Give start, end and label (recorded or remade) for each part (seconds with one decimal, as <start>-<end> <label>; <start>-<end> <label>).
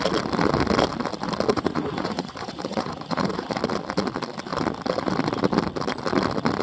0.0-1.5 recorded; 1.5-3.5 remade; 3.5-6.6 recorded